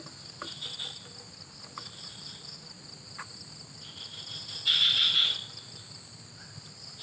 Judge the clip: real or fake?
real